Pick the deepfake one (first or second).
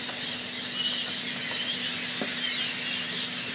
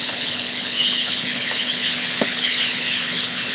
second